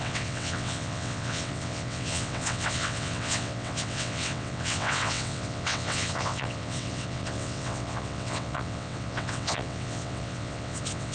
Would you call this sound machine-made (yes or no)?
yes